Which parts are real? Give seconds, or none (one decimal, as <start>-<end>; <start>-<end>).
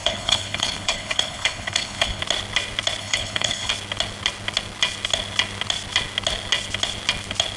2.2-3.0; 3.7-7.6